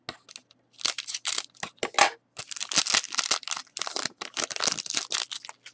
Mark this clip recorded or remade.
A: recorded